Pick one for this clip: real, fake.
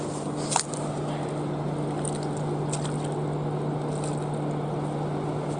real